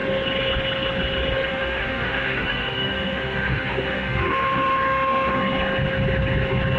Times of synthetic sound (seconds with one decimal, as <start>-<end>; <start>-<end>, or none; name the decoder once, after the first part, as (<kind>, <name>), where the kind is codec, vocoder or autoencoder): 1.5-5.4 (autoencoder, DAC-VAE)